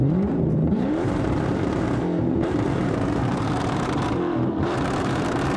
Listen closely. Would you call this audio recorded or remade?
remade